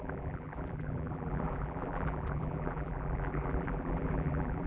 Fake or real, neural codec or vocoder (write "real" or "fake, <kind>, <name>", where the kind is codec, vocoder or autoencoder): fake, vocoder, BigVGAN v2